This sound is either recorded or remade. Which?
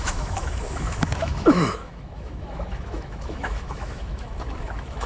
remade